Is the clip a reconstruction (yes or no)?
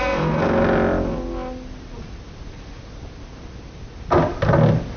no